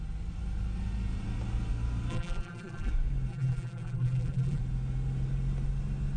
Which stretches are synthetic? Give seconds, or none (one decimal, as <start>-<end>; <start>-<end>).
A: 2.1-2.9; 3.3-4.6